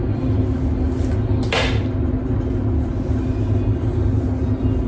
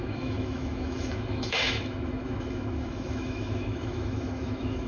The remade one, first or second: second